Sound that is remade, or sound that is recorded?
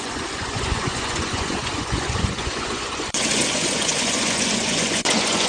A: remade